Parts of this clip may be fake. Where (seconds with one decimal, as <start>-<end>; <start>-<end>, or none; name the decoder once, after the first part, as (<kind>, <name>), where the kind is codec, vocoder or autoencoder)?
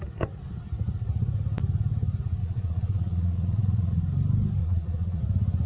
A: 2.4-4.0 (vocoder, Vocos); 4.6-5.2